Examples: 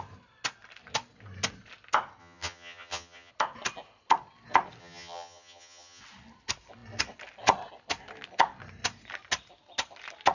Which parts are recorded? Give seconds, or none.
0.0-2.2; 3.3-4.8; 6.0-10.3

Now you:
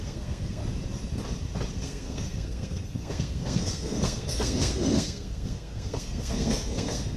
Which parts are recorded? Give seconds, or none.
0.6-1.7

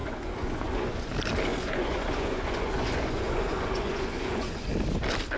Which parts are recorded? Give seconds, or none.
1.1-1.5; 4.7-5.4

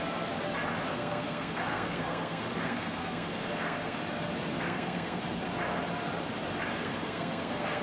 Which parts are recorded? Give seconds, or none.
0.0-0.9; 4.0-4.5; 5.2-6.7

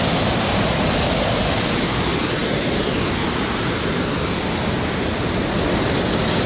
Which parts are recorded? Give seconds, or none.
0.0-6.5

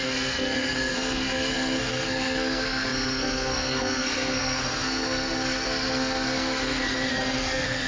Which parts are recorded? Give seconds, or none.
none

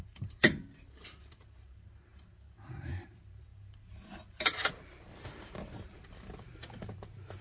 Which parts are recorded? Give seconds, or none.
none

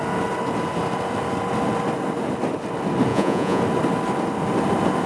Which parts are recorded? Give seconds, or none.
0.0-3.1; 3.6-5.1